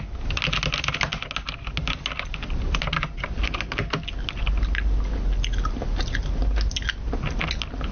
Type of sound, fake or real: real